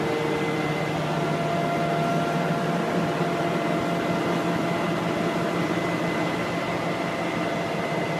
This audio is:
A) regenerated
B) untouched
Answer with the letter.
B